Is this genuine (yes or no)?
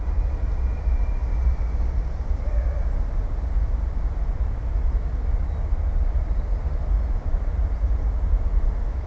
yes